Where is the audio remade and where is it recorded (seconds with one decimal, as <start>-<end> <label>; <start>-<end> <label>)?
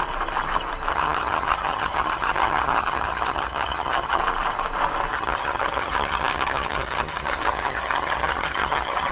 0.0-0.9 recorded; 0.9-4.2 remade; 4.2-5.1 recorded; 5.1-9.1 remade